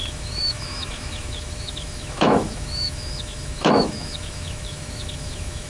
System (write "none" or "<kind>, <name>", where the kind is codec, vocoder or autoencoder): autoencoder, DAC-VAE